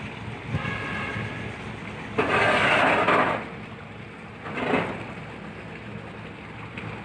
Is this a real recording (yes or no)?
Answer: yes